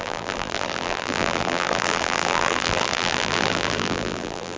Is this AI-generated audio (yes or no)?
yes